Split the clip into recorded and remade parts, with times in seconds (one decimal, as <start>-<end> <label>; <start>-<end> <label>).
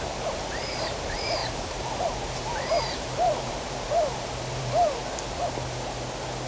0.0-5.0 remade; 5.0-6.5 recorded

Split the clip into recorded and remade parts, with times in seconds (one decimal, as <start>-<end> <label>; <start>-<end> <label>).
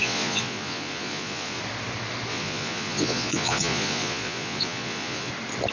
0.0-1.6 remade; 1.6-2.3 recorded; 2.3-5.3 remade; 5.3-5.7 recorded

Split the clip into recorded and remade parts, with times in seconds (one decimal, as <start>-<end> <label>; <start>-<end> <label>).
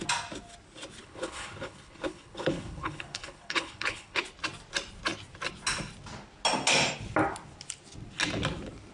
0.0-1.0 recorded; 1.0-4.2 remade; 4.2-8.9 recorded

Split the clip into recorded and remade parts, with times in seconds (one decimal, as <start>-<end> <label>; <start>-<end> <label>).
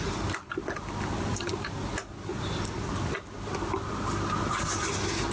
0.0-1.3 recorded; 1.3-1.8 remade; 1.8-5.3 recorded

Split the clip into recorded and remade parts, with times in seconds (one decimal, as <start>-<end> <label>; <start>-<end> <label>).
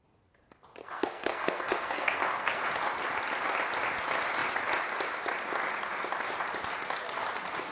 0.0-0.8 recorded; 0.8-2.7 remade; 2.7-7.7 recorded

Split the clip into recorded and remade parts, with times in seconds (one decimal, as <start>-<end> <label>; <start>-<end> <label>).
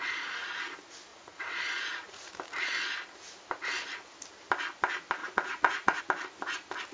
0.0-1.1 recorded; 1.1-2.3 remade; 2.3-5.2 recorded; 5.2-6.0 remade; 6.0-6.9 recorded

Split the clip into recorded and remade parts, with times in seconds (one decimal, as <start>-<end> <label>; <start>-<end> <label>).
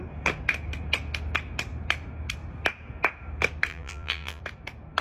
0.0-3.7 recorded; 3.7-4.4 remade; 4.4-5.0 recorded